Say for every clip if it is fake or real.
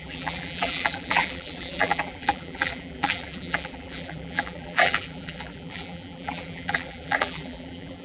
fake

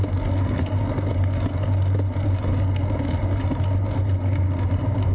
real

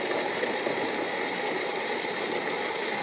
real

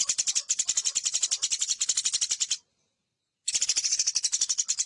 real